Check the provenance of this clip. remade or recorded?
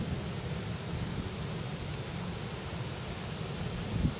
recorded